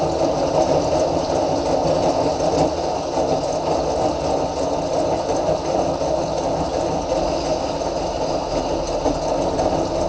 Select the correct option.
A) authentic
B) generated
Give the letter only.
A